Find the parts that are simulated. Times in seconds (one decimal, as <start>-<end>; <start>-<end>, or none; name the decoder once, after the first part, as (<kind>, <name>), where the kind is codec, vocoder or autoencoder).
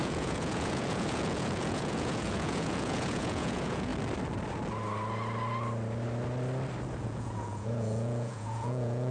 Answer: 0.0-3.9 (vocoder, Vocos); 7.0-9.1